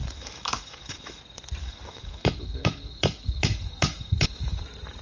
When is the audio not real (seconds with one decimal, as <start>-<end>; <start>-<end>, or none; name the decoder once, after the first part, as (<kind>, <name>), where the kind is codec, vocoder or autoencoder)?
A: 0.0-1.2 (autoencoder, DAC-VAE); 1.6-4.6

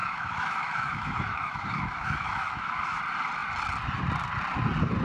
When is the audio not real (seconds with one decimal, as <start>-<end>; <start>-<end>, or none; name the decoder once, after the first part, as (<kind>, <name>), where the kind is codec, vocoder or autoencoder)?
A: 0.0-3.0 (autoencoder, DAC-VAE)

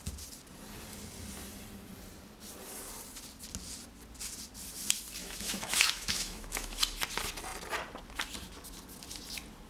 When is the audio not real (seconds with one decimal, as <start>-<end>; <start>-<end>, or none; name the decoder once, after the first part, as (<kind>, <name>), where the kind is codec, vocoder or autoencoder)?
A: 5.2-6.8 (autoencoder, DAC-VAE)

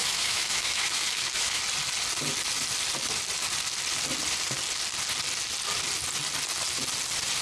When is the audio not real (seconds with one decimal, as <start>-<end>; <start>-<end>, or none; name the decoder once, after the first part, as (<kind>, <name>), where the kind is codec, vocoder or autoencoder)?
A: 0.0-1.6 (autoencoder, DAC-VAE)

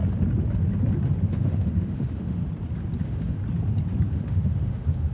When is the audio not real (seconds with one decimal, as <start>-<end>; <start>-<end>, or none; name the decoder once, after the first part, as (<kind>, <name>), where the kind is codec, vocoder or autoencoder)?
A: 1.3-2.4 (autoencoder, DAC-VAE); 3.0-3.4; 4.1-5.1

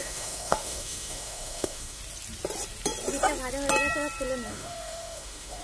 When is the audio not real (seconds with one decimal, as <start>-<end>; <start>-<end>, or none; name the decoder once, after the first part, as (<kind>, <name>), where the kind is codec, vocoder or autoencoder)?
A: 0.0-2.0 (autoencoder, DAC-VAE); 4.5-5.6